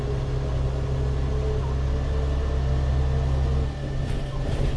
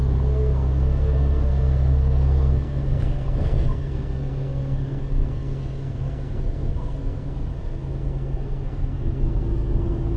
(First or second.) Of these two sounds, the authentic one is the first